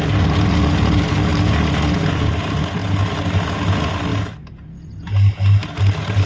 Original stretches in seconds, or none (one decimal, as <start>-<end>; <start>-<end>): 0.0-6.3